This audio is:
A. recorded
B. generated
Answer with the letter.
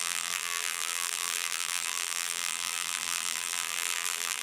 B